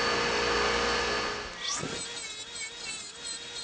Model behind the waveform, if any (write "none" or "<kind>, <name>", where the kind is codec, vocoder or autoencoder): none